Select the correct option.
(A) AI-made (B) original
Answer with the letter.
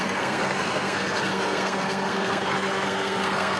A